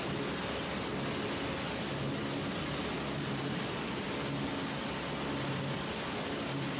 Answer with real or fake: real